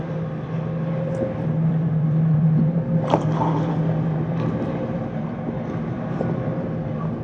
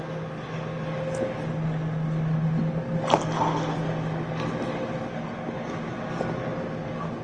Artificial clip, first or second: first